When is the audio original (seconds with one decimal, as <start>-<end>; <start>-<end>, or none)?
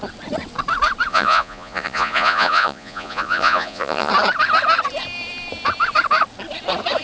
0.0-1.1; 4.1-7.0